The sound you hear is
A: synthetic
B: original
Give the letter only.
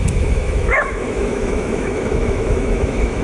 A